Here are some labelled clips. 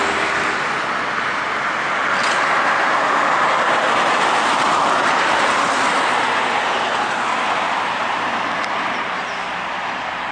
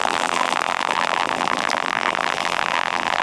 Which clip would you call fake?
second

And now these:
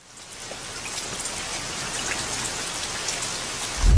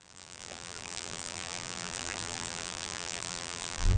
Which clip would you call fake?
second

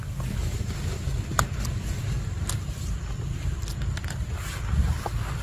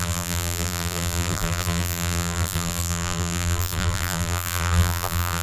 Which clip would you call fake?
second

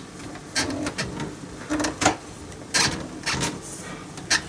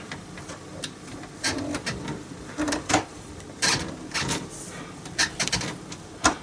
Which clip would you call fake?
second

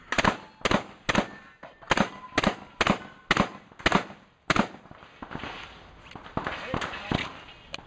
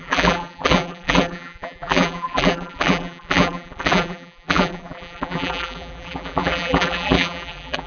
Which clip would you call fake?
second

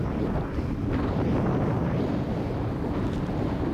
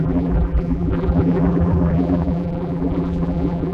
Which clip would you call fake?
second